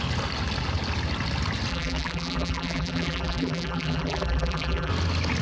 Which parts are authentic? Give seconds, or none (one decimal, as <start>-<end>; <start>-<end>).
0.0-1.7; 4.9-5.4

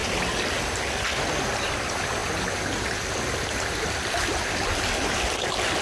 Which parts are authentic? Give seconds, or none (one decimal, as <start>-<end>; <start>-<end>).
0.0-5.8